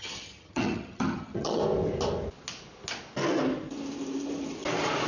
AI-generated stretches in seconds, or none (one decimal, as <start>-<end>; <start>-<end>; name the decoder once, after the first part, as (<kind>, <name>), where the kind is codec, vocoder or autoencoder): 0.0-1.6 (vocoder, HiFi-GAN)